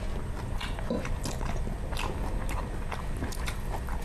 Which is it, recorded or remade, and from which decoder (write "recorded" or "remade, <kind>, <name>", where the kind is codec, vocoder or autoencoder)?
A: recorded